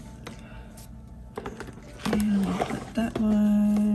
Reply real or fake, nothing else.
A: real